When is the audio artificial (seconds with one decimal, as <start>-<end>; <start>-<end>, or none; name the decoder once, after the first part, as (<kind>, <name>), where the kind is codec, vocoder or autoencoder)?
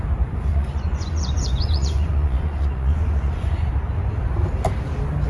0.5-3.7 (vocoder, Vocos)